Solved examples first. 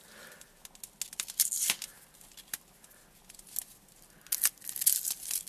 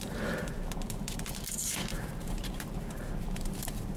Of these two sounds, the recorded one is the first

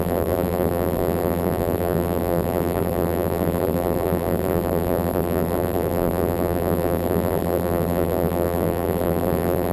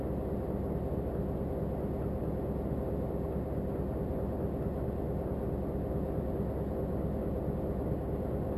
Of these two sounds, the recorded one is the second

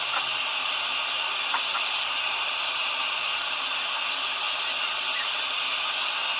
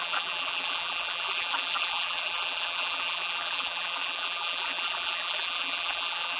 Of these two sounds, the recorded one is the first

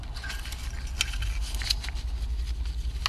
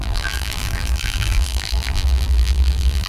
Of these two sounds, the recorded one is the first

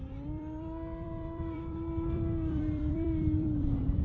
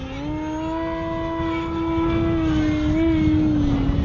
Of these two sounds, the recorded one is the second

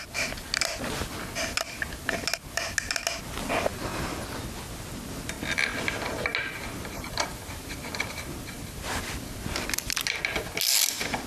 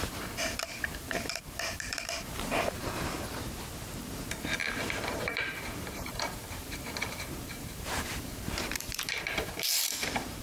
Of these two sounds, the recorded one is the first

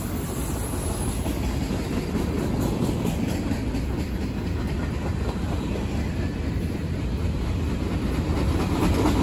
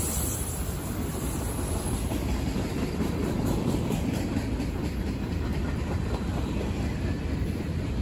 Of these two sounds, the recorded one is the first